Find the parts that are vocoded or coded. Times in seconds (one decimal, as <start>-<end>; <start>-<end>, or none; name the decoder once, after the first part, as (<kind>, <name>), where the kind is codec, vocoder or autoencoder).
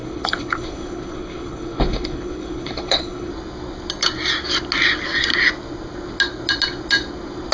0.0-3.3 (codec, HILCodec)